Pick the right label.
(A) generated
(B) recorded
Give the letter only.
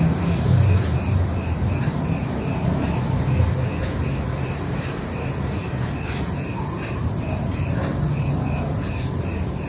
A